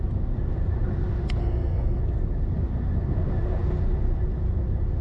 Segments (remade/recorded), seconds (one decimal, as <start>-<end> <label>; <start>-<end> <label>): 0.0-1.4 recorded; 1.4-2.0 remade; 2.0-5.0 recorded